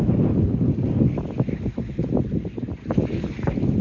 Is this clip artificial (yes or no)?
no